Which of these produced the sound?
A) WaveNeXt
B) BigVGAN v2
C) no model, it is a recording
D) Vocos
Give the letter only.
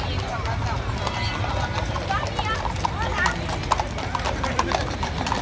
C